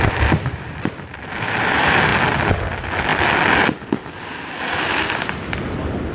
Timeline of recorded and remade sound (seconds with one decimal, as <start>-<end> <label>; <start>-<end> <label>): 0.0-6.1 recorded